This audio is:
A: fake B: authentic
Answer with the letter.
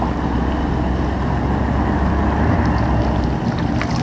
B